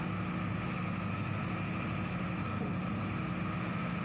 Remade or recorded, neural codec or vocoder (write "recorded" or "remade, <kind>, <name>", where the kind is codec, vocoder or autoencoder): recorded